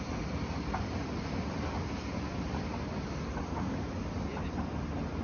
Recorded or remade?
recorded